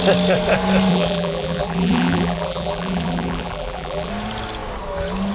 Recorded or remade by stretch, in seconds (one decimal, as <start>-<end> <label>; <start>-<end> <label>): 0.0-0.9 recorded; 0.9-4.1 remade; 4.1-5.3 recorded